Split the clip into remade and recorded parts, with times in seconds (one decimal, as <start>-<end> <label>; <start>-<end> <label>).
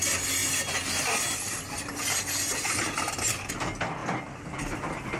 0.0-4.0 recorded; 4.0-4.6 remade; 4.6-5.2 recorded